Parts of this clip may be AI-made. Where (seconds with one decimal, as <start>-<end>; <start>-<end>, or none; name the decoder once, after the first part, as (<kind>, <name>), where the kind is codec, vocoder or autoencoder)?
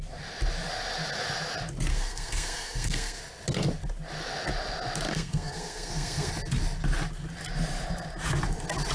1.9-3.2 (codec, SNAC); 5.1-6.3